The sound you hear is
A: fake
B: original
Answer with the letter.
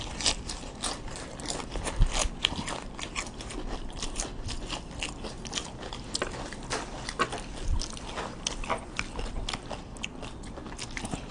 A